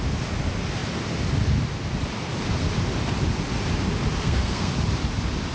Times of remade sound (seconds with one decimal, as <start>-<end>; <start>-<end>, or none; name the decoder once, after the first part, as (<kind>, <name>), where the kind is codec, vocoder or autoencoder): 4.2-4.7 (codec, SNAC)